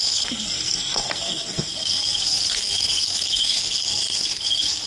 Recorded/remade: remade